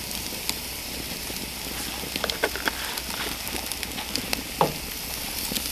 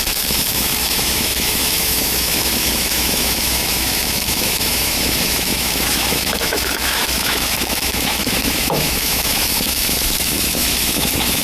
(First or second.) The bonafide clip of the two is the first